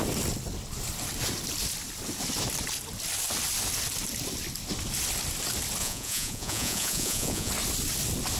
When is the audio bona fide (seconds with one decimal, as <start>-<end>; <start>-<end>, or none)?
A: 0.0-5.8; 7.5-8.4